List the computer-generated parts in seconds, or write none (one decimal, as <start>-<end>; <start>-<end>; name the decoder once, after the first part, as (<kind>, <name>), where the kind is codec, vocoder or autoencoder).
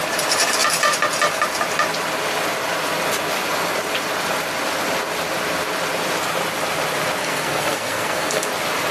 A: 7.2-8.5 (codec, SNAC)